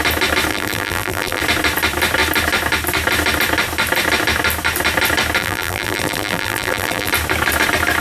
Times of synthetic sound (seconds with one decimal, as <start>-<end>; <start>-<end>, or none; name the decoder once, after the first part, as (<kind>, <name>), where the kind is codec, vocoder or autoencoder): 0.5-1.4 (vocoder, BigVGAN v2); 5.4-7.1